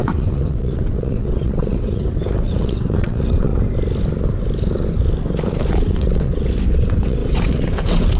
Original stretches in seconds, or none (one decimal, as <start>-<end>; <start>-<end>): 3.5-5.7